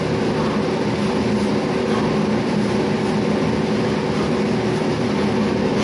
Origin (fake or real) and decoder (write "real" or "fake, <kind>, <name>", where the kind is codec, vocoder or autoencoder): real